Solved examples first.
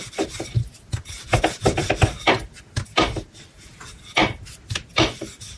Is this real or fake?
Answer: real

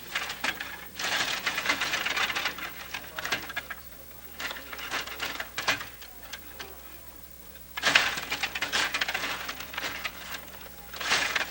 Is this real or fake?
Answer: fake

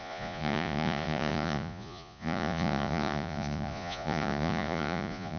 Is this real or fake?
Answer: fake